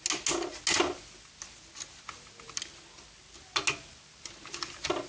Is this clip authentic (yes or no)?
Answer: yes